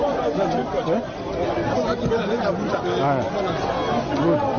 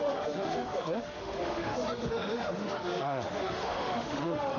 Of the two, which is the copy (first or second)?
second